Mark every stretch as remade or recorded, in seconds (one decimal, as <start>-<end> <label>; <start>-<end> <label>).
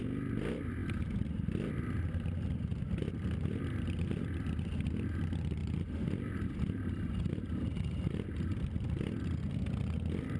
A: 0.0-10.4 recorded